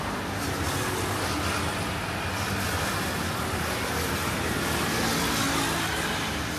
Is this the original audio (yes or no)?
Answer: yes